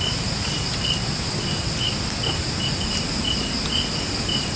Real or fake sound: real